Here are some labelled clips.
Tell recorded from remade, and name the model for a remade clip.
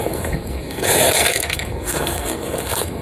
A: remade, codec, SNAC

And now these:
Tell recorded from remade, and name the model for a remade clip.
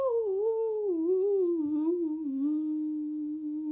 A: recorded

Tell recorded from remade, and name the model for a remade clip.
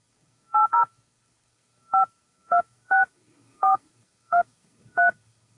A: remade, codec, SNAC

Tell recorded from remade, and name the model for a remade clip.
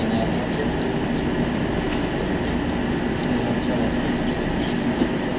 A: recorded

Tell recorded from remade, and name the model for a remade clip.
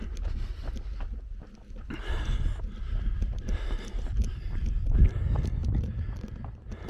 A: recorded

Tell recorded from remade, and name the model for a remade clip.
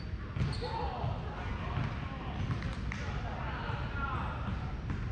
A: recorded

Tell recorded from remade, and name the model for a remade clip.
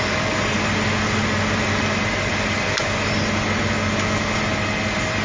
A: recorded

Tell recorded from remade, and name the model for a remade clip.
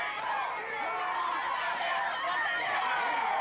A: recorded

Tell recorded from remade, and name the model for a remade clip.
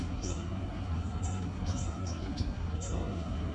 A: remade, codec, SNAC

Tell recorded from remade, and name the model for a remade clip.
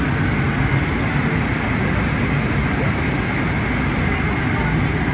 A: recorded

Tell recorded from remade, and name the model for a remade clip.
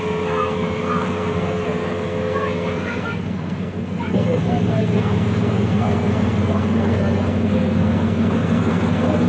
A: remade, codec, SNAC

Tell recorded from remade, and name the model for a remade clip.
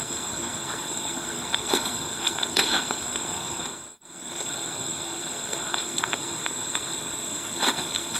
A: remade, codec, SNAC